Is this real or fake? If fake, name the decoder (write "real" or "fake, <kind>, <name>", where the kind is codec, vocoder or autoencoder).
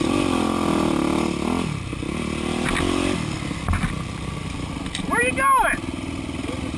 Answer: real